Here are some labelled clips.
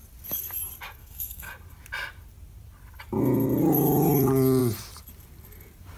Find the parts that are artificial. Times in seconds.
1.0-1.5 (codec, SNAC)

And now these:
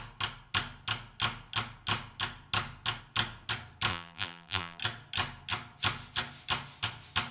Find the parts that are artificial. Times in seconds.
3.9-4.8 (vocoder, BigVGAN v2)